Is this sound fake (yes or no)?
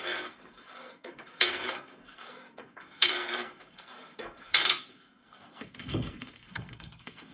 yes